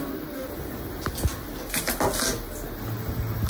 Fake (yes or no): no